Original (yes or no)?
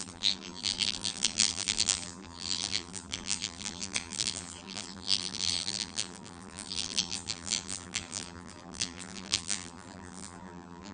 no